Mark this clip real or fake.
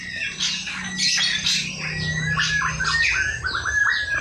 real